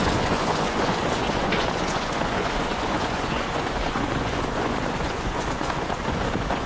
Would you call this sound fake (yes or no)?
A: yes